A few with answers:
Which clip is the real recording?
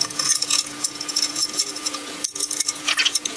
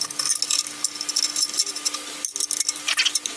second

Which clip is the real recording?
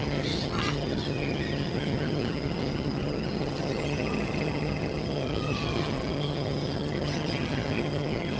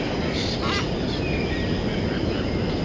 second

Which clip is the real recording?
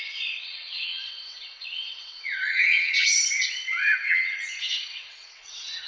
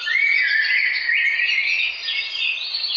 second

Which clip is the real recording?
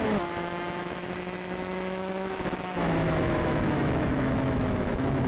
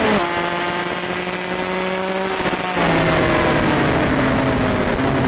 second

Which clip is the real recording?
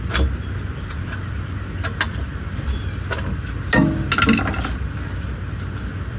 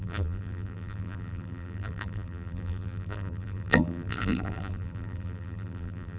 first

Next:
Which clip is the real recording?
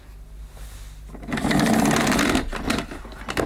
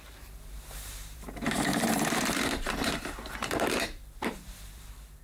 first